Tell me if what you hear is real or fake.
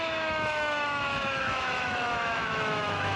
fake